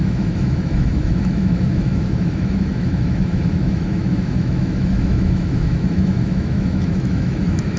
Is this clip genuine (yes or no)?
no